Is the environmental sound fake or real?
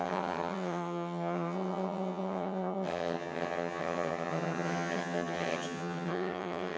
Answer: fake